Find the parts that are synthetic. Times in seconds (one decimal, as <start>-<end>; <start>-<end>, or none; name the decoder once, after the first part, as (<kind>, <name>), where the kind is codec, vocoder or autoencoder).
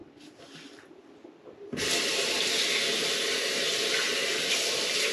none